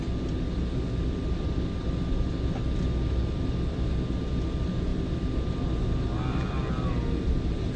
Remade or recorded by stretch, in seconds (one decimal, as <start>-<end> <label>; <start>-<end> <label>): 0.0-7.8 recorded